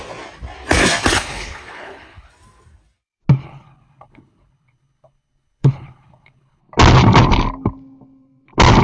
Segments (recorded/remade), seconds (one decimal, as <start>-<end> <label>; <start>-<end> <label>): 0.0-1.1 recorded; 1.1-2.3 remade; 2.3-3.4 recorded; 3.4-6.6 remade; 6.6-8.8 recorded